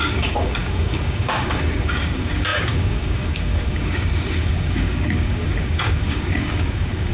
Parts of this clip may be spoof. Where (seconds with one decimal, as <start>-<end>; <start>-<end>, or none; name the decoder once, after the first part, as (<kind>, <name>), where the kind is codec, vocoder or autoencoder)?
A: 0.0-7.1 (codec, DAC)